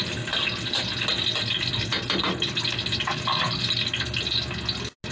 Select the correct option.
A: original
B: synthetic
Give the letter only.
A